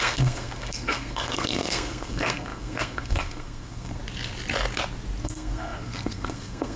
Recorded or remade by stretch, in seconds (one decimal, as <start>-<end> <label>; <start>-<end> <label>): 0.0-4.0 remade; 4.0-5.2 recorded; 5.2-6.8 remade